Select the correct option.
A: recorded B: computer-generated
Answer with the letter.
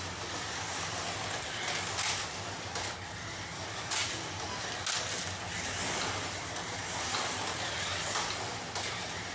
A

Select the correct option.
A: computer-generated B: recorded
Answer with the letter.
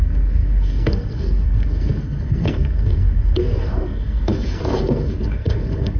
A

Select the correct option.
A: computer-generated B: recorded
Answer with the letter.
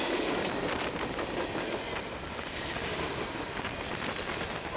B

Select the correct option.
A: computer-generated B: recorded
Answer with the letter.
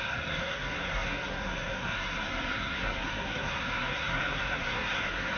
A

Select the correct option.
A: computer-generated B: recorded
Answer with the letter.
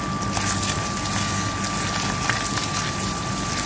B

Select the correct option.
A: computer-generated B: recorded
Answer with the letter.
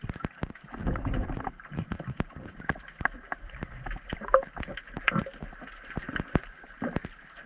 B